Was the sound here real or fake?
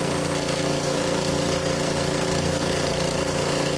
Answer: fake